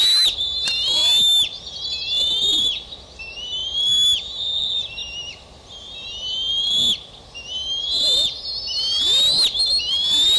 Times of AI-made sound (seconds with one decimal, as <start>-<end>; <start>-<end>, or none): none